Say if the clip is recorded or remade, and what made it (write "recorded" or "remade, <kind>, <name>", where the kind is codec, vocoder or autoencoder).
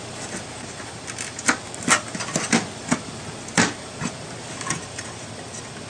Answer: recorded